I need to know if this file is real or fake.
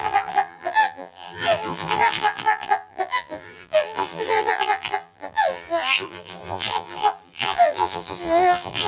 fake